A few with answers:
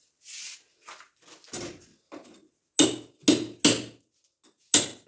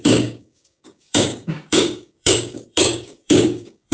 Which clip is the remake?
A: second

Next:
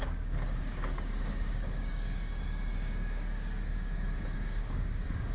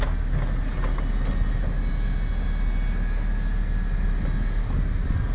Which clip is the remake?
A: first